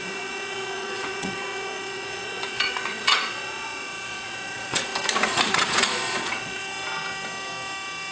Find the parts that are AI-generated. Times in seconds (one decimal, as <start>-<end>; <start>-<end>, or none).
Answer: 0.0-4.9; 5.5-6.6

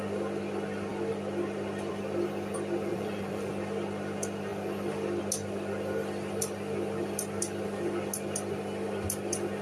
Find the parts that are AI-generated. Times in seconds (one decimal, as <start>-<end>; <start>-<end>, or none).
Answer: 2.9-3.5

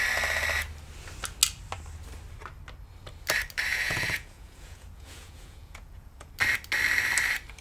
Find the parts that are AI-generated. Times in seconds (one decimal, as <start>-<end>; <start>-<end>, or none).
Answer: 3.7-6.3